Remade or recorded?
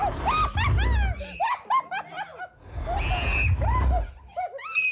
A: recorded